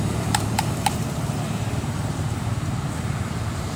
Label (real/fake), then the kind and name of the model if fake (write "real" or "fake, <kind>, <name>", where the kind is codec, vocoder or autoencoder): fake, vocoder, BigVGAN v2